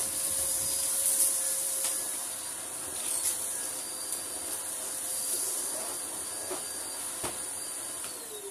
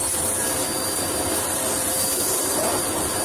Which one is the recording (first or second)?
second